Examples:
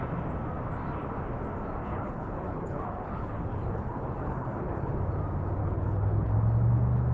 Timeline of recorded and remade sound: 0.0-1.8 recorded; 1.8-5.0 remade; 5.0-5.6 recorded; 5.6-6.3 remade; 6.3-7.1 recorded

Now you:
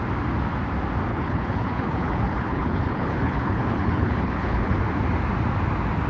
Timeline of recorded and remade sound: 0.0-1.1 recorded; 1.1-4.8 remade; 4.8-6.1 recorded

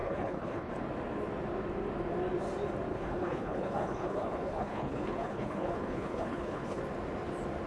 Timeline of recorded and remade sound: 0.0-0.7 remade; 0.7-2.9 recorded; 2.9-6.8 remade; 6.8-7.7 recorded